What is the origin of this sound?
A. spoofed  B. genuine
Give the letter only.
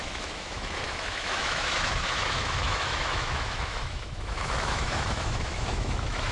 A